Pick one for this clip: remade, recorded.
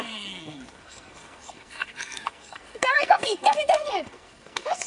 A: remade